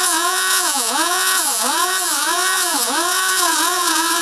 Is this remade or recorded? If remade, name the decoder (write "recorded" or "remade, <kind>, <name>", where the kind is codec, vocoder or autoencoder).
remade, vocoder, Vocos